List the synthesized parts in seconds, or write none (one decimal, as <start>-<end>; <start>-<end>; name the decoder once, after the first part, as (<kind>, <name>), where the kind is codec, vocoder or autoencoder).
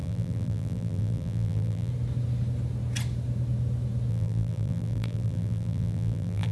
0.0-1.9 (vocoder, BigVGAN v2); 4.1-6.5